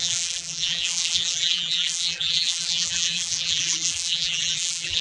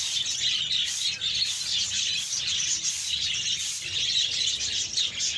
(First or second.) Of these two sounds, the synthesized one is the first